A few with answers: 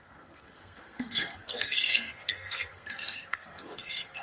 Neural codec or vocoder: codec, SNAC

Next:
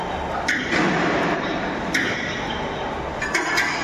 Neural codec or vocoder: none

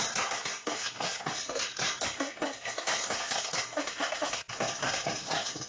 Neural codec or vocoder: codec, SNAC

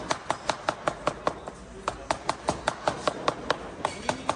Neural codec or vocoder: none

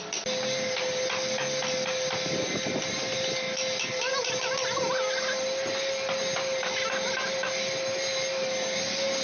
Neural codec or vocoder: none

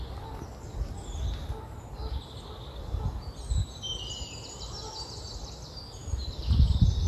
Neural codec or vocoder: none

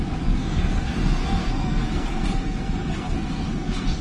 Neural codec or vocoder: codec, SNAC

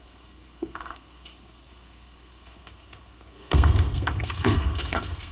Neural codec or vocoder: codec, SNAC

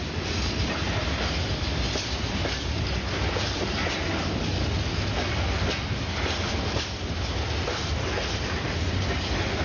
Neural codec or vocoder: none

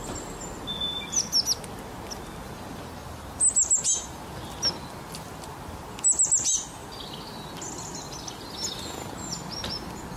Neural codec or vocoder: none